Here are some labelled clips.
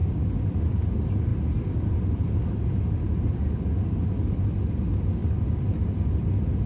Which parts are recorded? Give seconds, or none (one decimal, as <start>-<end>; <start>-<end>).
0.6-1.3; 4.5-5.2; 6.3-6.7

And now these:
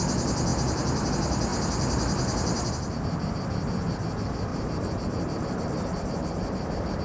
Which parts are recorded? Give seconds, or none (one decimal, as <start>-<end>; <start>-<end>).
0.0-1.5; 2.7-4.5

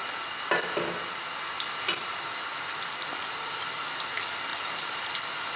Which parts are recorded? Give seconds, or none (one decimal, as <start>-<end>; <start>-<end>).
0.0-4.5; 5.1-5.6

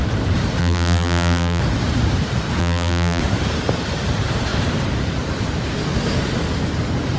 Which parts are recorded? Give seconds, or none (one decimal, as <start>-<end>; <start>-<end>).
0.0-0.6; 1.6-2.6; 3.2-7.2

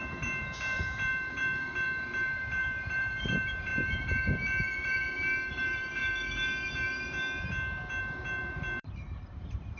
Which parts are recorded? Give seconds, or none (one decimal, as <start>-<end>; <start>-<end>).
3.7-5.5; 6.0-8.0

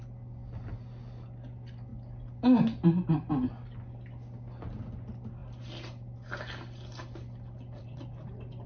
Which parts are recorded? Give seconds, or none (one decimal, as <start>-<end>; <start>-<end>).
0.0-8.7

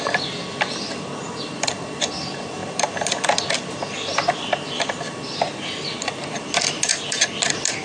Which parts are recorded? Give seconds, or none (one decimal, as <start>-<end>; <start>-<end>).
2.6-3.5

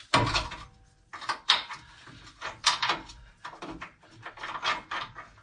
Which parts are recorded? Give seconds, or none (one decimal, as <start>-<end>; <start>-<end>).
0.0-1.1; 4.3-5.4